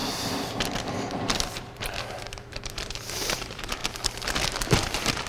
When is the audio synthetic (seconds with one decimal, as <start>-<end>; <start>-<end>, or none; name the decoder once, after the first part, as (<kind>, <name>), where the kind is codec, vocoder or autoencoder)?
1.1-3.8 (vocoder, BigVGAN v2); 4.5-5.3